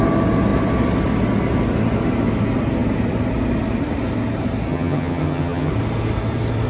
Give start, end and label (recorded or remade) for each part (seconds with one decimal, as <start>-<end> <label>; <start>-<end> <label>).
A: 0.0-4.7 recorded; 4.7-5.7 remade; 5.7-6.7 recorded